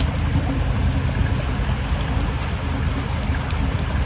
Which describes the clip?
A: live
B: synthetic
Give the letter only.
A